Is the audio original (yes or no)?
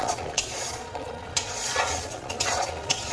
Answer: no